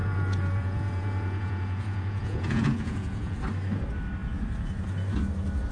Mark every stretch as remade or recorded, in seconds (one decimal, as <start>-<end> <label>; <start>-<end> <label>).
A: 0.0-3.4 remade; 3.4-5.7 recorded